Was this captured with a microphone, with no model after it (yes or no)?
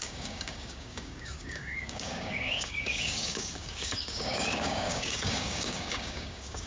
no